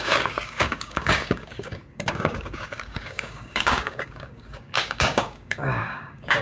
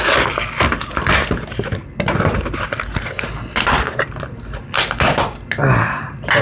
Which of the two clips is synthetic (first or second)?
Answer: first